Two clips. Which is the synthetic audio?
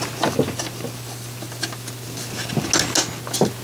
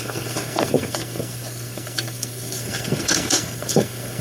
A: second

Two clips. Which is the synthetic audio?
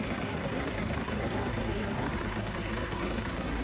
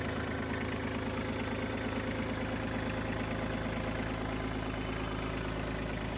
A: first